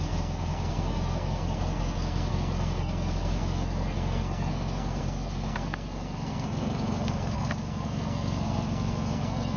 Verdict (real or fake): fake